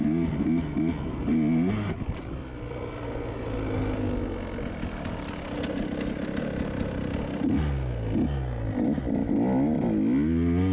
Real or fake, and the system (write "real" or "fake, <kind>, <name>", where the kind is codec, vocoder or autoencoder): real